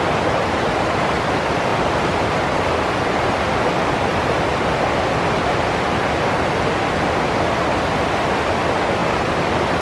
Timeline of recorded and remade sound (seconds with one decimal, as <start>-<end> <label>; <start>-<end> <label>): 0.0-9.8 recorded